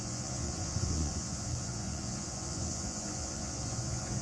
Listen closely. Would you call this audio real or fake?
fake